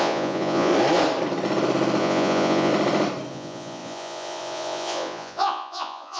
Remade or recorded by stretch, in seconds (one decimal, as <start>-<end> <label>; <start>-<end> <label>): 0.0-0.7 remade; 0.7-2.0 recorded; 2.0-2.7 remade; 2.7-3.3 recorded; 3.3-6.2 remade